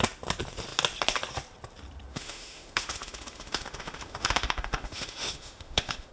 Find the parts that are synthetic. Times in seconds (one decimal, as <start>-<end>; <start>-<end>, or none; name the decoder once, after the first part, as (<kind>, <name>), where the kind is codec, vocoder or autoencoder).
2.1-6.1 (autoencoder, DAC-VAE)